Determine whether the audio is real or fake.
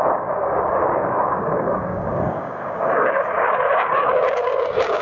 fake